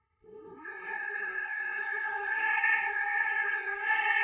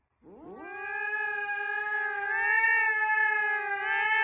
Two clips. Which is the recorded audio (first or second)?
second